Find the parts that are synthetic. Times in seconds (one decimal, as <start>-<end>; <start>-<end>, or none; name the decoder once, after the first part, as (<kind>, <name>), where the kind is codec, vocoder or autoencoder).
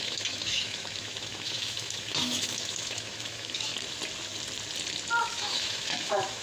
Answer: 0.0-3.7 (autoencoder, DAC-VAE); 5.2-6.4